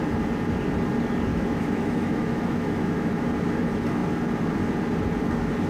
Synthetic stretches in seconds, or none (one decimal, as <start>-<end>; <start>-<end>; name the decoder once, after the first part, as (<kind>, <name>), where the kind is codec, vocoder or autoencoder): 1.3-3.3 (autoencoder, DAC-VAE)

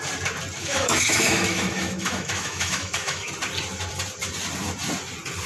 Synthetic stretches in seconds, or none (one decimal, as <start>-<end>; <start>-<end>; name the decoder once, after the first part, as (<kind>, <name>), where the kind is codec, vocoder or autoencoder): 0.6-3.3 (autoencoder, DAC-VAE)